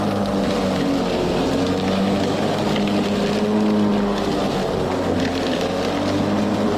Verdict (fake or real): real